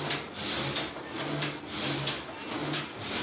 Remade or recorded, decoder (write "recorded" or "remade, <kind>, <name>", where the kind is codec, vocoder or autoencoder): recorded